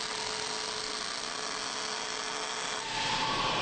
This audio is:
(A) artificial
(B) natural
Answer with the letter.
B